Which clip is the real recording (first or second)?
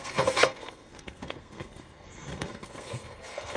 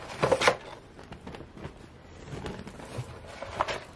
second